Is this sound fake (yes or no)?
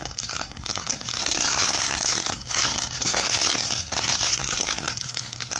yes